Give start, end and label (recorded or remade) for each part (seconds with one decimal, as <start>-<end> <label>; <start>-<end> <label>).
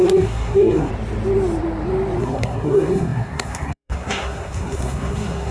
0.0-0.9 remade; 0.9-2.2 recorded; 2.2-5.5 remade